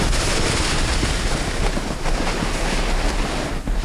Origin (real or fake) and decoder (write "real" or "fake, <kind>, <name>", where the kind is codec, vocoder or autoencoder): real